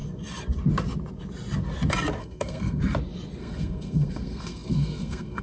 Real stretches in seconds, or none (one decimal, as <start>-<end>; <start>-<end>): 0.0-2.2; 2.8-3.4